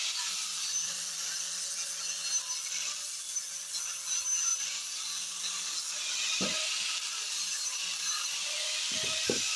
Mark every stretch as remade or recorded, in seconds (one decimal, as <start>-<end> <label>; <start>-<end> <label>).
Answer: 0.0-9.6 recorded